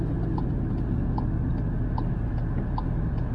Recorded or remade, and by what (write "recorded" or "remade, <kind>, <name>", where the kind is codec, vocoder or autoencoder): recorded